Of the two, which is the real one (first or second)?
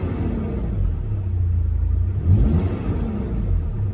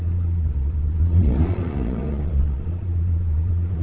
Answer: first